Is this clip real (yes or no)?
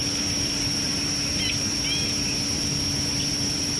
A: yes